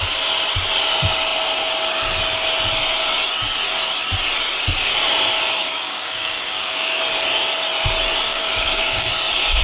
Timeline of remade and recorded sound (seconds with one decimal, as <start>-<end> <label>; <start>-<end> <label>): 0.0-5.6 recorded; 5.6-7.0 remade; 7.0-8.3 recorded; 8.3-9.1 remade; 9.1-9.6 recorded